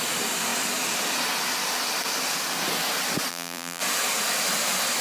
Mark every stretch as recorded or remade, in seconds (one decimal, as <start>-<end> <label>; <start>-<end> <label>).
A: 0.0-3.3 recorded; 3.3-3.8 remade; 3.8-5.0 recorded